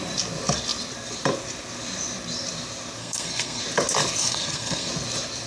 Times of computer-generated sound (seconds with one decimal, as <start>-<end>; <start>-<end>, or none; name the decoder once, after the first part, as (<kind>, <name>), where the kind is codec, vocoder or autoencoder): 3.0-3.6 (codec, SNAC); 4.2-4.9